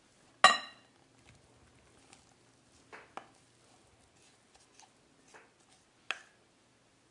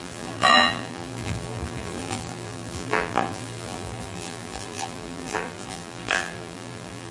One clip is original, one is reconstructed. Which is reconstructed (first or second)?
second